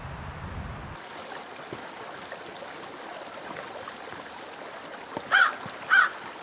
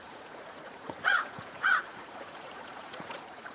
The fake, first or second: second